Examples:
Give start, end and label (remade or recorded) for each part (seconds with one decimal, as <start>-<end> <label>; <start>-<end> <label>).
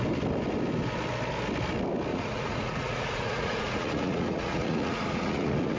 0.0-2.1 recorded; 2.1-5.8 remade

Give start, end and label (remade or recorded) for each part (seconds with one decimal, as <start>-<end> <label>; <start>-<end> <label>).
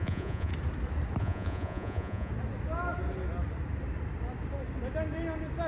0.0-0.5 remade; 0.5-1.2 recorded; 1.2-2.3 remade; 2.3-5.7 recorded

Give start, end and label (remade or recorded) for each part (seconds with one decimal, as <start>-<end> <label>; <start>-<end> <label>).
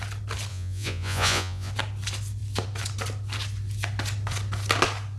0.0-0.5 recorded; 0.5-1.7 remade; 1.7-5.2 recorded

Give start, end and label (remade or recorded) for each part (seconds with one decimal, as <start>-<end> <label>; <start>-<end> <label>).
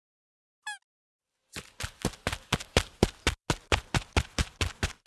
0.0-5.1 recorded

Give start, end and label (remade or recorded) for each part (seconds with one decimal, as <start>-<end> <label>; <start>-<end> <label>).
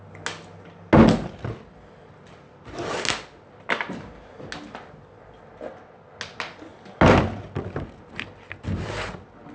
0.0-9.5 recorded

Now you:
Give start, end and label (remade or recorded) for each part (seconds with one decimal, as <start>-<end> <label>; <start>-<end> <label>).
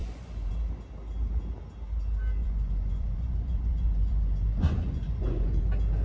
0.0-0.5 remade; 0.5-2.4 recorded; 2.4-5.6 remade; 5.6-6.0 recorded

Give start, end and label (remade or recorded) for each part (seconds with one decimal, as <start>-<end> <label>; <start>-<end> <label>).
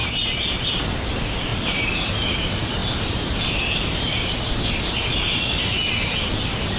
0.0-6.8 recorded